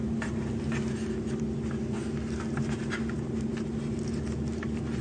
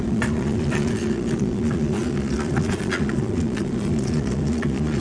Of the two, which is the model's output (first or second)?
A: second